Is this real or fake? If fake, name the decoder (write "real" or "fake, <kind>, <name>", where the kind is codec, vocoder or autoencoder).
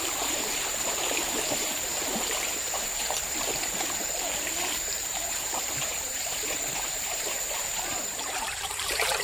fake, vocoder, BigVGAN v2